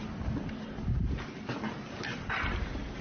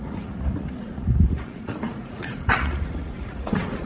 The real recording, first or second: first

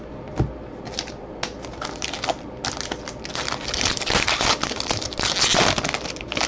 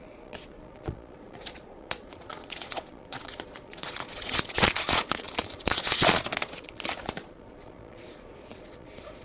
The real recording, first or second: first